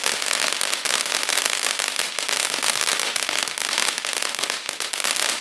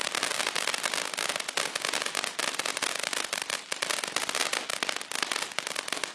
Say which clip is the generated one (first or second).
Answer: first